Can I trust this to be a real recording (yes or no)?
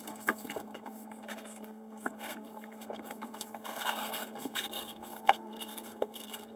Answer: no